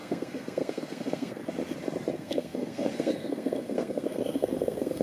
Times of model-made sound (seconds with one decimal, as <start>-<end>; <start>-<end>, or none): 0.0-1.4; 2.1-5.0